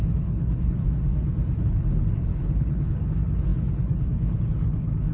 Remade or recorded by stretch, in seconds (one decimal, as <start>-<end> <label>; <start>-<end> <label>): 0.0-0.8 remade; 0.8-1.6 recorded; 1.6-5.1 remade